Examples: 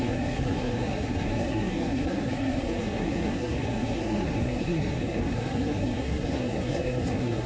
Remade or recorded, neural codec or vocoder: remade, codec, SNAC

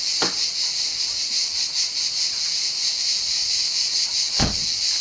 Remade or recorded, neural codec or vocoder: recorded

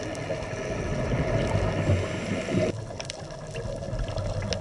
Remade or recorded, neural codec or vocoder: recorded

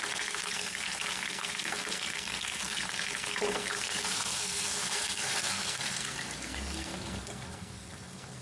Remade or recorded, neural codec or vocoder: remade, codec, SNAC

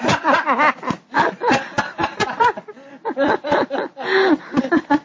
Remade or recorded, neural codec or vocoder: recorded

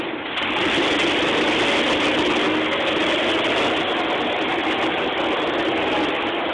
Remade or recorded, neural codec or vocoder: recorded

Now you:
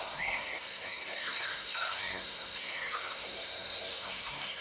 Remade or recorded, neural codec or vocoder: remade, codec, SNAC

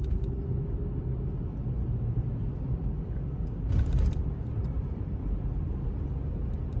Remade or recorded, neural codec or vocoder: recorded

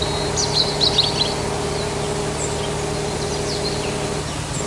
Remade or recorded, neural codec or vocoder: recorded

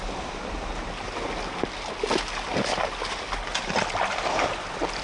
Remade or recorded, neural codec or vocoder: recorded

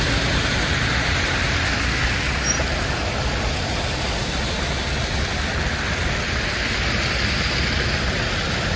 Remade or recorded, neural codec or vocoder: recorded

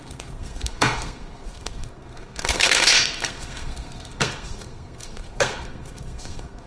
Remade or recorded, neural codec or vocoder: remade, codec, SNAC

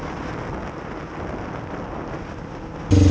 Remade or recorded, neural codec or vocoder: recorded